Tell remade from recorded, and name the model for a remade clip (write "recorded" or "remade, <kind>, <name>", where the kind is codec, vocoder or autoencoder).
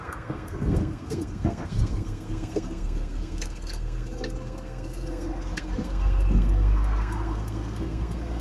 remade, codec, SNAC